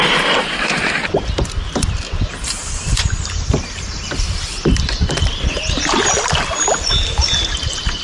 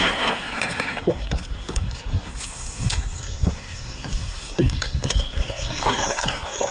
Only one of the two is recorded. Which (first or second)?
first